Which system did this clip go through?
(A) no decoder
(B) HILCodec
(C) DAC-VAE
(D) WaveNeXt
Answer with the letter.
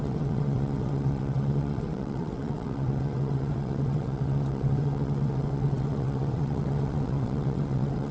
D